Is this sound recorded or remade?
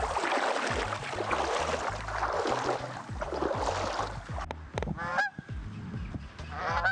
recorded